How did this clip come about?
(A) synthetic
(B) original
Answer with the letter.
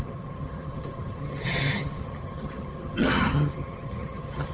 A